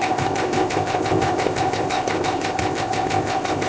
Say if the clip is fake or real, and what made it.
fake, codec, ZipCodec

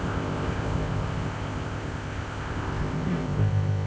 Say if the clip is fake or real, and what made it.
fake, codec, ZipCodec